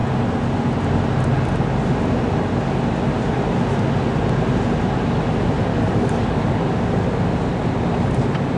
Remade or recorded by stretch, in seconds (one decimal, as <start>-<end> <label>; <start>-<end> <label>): 0.0-5.7 recorded; 5.7-6.6 remade; 6.6-8.6 recorded